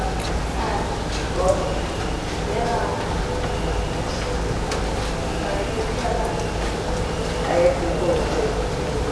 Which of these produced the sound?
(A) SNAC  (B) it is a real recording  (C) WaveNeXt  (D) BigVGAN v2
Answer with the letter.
B